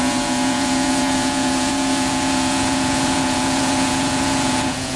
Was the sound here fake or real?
fake